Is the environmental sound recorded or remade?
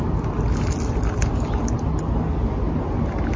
recorded